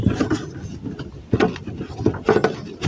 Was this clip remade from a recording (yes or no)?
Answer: no